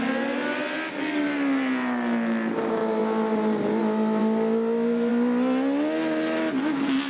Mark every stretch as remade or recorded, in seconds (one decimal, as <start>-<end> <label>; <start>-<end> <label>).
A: 0.0-7.1 recorded

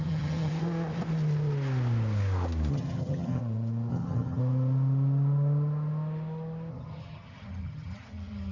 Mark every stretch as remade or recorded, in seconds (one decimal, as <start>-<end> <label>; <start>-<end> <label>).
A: 0.0-0.5 remade; 0.5-2.7 recorded; 2.7-3.4 remade; 3.4-3.9 recorded; 3.9-4.4 remade; 4.4-6.7 recorded; 6.7-8.5 remade

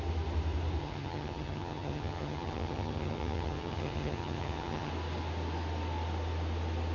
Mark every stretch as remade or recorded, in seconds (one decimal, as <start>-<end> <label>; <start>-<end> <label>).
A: 0.0-0.8 recorded; 0.8-4.9 remade; 4.9-6.9 recorded

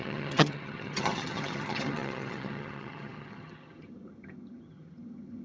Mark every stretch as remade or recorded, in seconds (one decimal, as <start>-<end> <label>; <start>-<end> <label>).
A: 0.0-5.4 remade